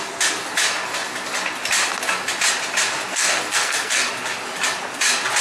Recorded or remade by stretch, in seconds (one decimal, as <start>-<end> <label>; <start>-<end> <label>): 0.0-3.1 recorded; 3.1-4.1 remade; 4.1-5.4 recorded